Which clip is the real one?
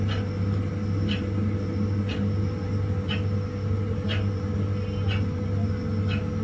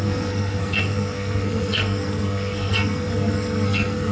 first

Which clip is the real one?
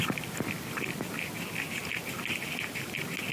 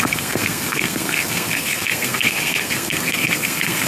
first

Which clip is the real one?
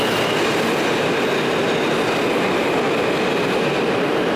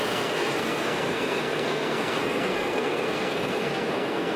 first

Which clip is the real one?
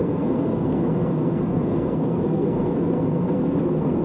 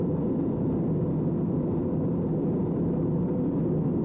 second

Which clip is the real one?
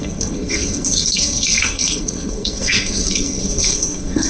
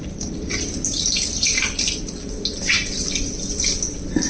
second